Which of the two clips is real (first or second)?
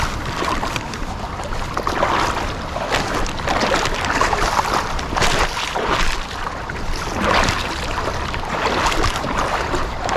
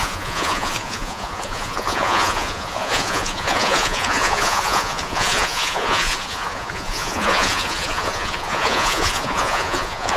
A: first